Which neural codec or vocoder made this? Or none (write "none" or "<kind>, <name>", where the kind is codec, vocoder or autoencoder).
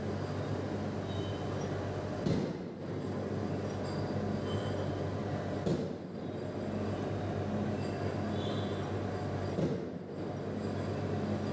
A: none